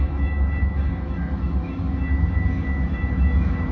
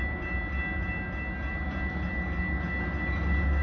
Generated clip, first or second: first